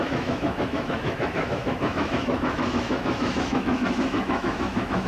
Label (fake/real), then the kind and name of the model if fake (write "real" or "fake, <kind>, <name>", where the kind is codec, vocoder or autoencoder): fake, autoencoder, DAC-VAE